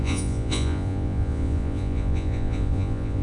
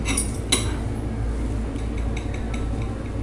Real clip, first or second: second